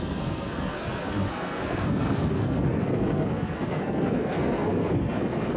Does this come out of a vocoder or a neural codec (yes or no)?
yes